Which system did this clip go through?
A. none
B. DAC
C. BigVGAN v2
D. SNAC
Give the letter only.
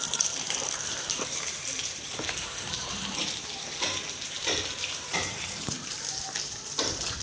C